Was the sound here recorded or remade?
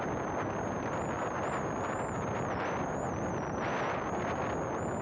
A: recorded